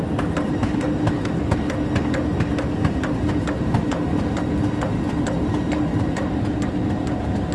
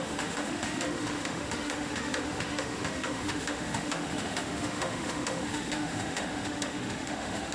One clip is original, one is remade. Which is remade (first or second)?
second